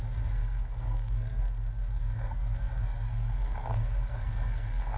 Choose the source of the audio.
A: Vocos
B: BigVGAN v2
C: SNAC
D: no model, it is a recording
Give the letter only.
C